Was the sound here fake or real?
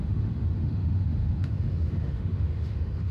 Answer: fake